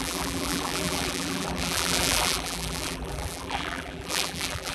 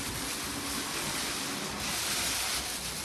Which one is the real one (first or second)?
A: second